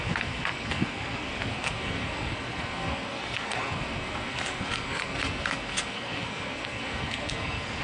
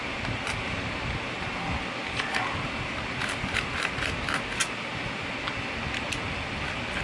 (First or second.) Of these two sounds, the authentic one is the second